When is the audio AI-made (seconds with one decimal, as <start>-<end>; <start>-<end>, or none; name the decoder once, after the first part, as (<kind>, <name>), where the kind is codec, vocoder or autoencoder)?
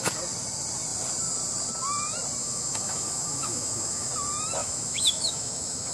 2.4-4.1 (autoencoder, DAC-VAE); 4.6-5.9